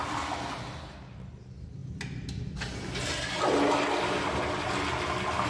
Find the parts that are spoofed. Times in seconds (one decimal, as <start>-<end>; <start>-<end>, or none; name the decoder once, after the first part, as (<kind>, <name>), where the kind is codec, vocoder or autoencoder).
none